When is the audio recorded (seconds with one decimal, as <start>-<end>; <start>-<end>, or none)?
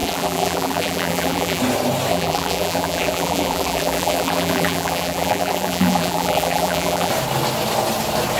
1.6-2.1; 7.1-8.4